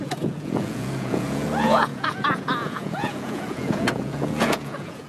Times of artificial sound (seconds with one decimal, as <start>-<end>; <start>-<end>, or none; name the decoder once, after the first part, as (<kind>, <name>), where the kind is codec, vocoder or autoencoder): 0.0-5.1 (vocoder, Vocos)